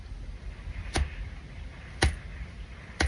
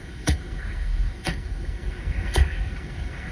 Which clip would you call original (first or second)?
first